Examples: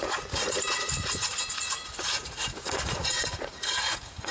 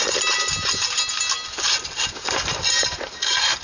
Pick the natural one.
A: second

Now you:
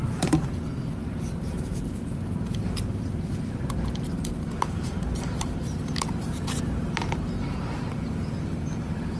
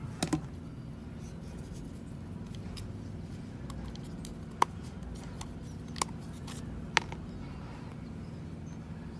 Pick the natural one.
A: second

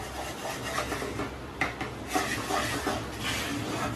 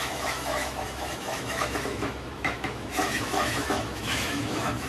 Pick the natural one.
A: first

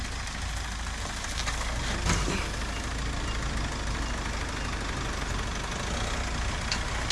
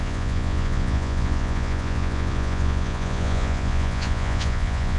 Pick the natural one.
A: first